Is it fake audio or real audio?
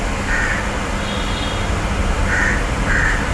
real